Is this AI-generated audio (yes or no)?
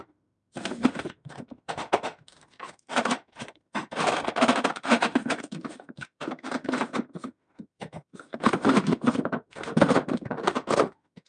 yes